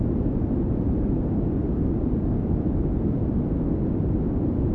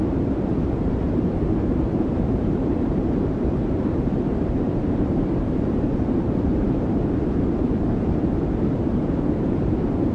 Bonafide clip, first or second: first